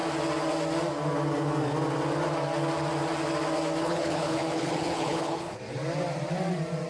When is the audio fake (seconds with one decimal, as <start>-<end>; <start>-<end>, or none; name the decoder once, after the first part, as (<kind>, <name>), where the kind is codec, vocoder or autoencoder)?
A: 3.8-5.6 (codec, HILCodec)